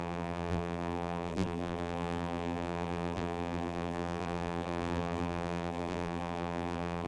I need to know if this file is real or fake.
fake